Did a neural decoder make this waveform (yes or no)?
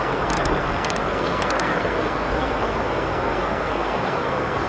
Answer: yes